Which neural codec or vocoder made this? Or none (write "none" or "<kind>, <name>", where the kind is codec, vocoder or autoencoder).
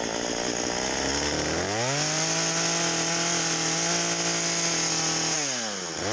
none